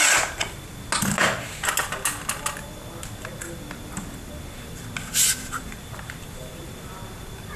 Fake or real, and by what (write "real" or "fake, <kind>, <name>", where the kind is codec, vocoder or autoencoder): real